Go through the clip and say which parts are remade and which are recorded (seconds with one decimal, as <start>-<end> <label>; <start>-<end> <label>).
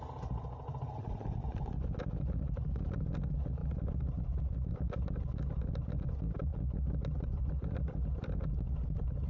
0.0-9.3 recorded